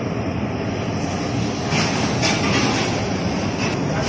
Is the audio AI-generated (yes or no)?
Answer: no